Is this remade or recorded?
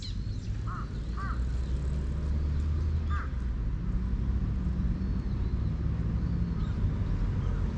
recorded